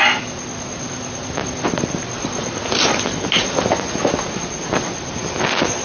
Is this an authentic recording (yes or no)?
yes